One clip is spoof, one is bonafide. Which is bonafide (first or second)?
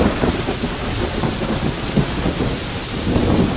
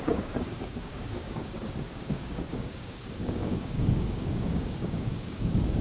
first